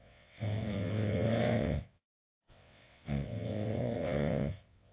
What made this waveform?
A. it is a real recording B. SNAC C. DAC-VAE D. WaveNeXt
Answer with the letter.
D